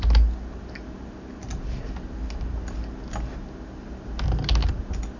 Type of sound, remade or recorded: recorded